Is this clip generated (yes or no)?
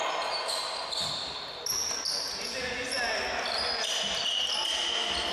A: no